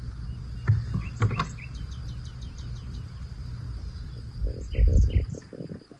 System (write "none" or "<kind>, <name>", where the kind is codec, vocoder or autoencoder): none